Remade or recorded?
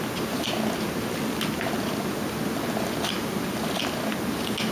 recorded